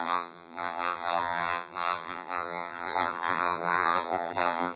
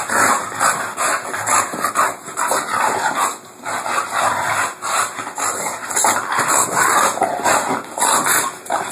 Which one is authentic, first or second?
second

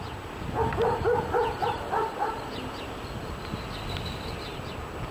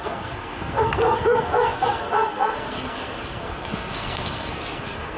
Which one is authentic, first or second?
first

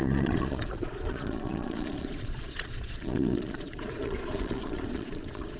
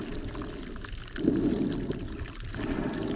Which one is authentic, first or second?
second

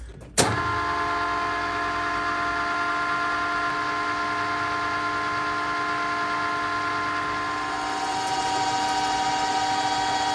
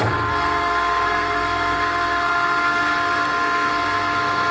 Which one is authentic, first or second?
first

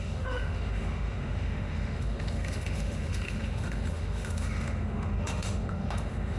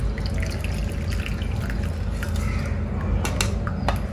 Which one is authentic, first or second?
second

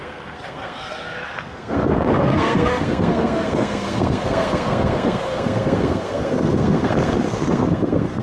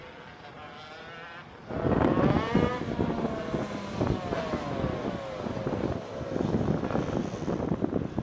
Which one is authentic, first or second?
second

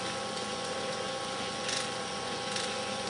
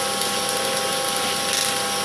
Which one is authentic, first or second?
second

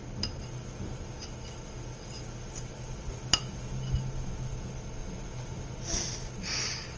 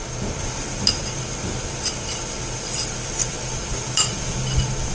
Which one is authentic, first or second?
first